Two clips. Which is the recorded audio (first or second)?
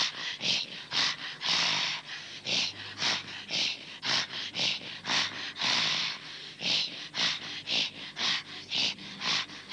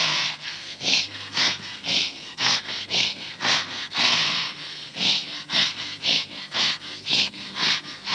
first